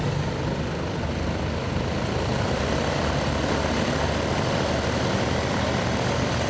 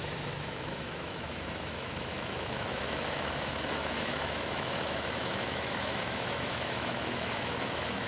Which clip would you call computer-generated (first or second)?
second